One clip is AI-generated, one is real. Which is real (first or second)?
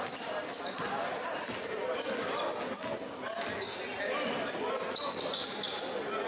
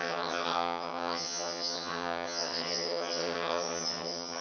first